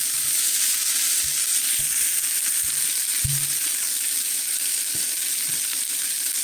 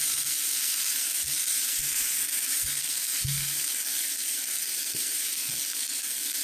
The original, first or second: first